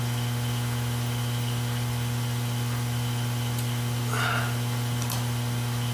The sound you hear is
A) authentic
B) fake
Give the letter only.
A